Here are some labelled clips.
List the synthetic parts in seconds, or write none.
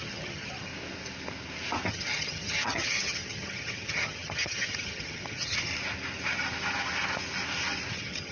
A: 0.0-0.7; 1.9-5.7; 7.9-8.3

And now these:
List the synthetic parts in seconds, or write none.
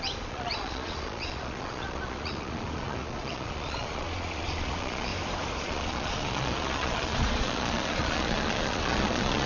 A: 0.0-5.1; 5.6-9.5